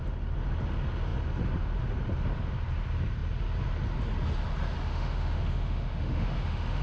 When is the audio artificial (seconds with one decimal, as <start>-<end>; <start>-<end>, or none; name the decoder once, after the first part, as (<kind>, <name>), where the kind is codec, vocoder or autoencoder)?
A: 4.9-6.8 (autoencoder, DAC-VAE)